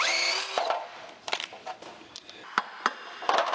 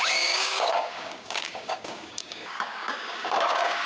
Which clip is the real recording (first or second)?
first